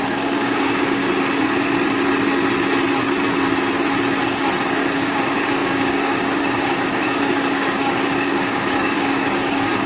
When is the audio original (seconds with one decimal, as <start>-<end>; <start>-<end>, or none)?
1.0-4.9